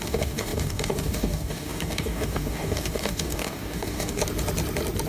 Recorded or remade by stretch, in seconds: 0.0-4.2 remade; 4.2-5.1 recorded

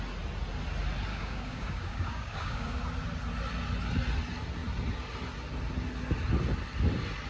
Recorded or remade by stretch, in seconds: 0.0-1.1 recorded; 1.1-2.8 remade; 2.8-7.3 recorded

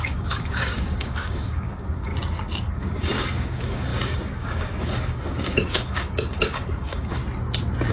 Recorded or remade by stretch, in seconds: 0.0-2.1 remade; 2.1-2.7 recorded; 2.7-7.2 remade; 7.2-7.9 recorded

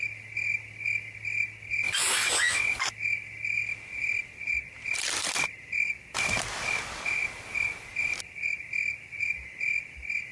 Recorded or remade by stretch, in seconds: 0.0-10.3 recorded

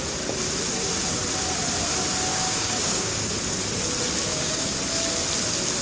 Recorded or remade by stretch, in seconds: 0.0-2.3 recorded; 2.3-3.3 remade; 3.3-4.3 recorded; 4.3-4.8 remade; 4.8-5.8 recorded

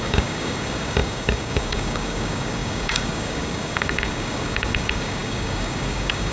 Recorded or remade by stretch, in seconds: 0.0-6.3 remade

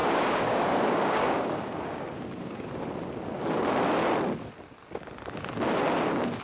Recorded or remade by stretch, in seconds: 0.0-2.7 remade; 2.7-6.4 recorded

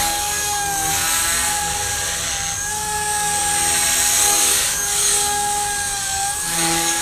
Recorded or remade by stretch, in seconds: 0.0-1.2 remade; 1.2-2.7 recorded; 2.7-3.4 remade; 3.4-4.2 recorded; 4.2-7.0 remade